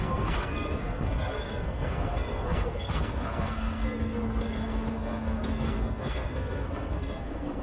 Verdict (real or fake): fake